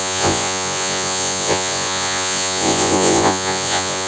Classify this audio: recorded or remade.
remade